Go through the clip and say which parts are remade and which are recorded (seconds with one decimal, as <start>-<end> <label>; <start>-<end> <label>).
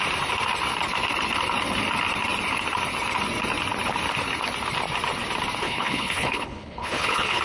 0.0-5.6 recorded; 5.6-7.4 remade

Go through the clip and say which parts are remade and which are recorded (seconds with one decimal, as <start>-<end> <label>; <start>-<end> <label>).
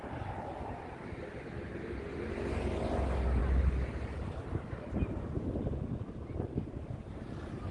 0.0-7.7 recorded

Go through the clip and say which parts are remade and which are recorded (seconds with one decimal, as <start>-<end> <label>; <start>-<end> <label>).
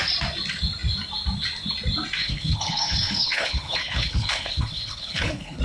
0.0-2.2 recorded; 2.2-5.6 remade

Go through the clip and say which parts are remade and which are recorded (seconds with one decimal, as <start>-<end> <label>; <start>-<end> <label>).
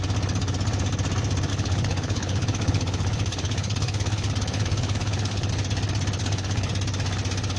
0.0-1.5 recorded; 1.5-5.5 remade; 5.5-6.2 recorded; 6.2-6.7 remade; 6.7-7.6 recorded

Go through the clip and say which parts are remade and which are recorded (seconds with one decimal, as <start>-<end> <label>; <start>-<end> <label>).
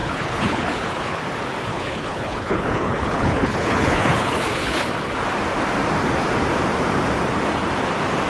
0.0-1.2 remade; 1.2-1.7 recorded; 1.7-4.9 remade; 4.9-8.3 recorded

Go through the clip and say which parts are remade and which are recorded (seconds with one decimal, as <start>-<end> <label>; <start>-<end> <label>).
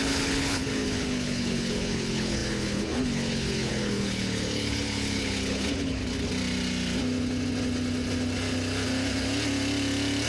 0.0-6.0 remade; 6.0-10.3 recorded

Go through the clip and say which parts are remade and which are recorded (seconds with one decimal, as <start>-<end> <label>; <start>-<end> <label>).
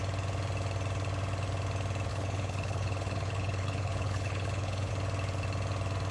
0.0-2.1 recorded; 2.1-4.9 remade; 4.9-6.1 recorded